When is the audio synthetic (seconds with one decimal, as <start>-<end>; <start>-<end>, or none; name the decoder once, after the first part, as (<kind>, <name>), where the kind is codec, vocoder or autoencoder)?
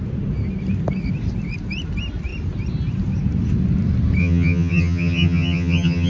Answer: 4.2-6.1 (vocoder, HiFi-GAN)